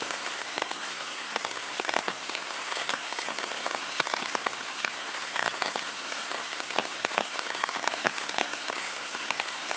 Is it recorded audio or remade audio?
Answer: remade